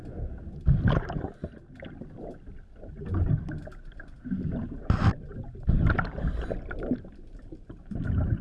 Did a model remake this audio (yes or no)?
no